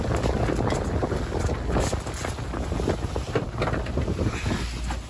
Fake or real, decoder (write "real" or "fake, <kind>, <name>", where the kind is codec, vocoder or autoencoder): real